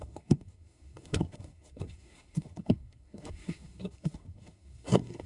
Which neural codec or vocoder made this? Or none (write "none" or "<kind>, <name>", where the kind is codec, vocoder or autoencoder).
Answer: codec, SNAC